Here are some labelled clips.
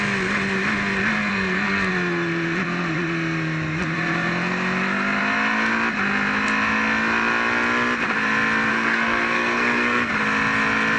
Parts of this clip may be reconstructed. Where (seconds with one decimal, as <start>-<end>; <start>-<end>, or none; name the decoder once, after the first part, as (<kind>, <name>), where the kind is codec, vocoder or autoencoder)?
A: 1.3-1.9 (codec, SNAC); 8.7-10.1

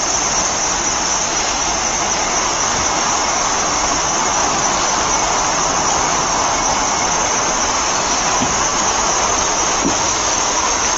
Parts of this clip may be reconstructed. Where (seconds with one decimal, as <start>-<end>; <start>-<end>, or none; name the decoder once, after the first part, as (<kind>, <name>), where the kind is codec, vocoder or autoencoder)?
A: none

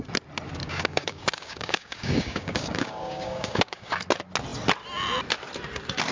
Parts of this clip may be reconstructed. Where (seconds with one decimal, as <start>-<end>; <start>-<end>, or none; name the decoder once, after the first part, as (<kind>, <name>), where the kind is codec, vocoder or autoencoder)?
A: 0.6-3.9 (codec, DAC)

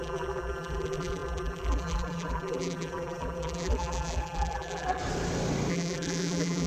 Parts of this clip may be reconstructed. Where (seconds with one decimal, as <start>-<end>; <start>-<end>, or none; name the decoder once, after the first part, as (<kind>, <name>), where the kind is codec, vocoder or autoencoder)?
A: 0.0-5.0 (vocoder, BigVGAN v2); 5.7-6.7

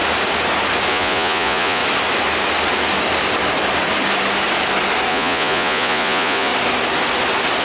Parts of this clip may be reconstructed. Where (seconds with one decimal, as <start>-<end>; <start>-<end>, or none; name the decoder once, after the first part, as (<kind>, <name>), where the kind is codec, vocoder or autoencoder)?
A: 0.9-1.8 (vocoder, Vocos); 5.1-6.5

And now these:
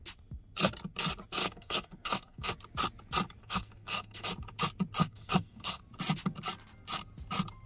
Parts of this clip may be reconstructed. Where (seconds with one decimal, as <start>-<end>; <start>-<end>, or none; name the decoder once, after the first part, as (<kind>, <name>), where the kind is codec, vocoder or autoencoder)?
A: 1.4-2.5 (codec, SNAC); 3.4-4.3; 5.0-5.8

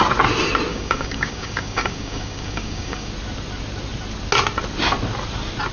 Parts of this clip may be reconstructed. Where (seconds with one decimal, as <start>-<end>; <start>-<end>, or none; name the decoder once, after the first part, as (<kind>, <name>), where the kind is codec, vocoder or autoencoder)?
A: 0.7-3.1 (codec, DAC)

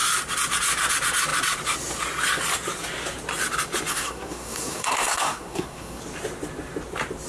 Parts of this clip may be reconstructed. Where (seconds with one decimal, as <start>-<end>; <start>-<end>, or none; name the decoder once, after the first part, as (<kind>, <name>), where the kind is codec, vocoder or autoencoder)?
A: 3.9-6.0 (codec, SNAC)